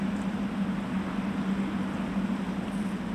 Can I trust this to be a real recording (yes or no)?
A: yes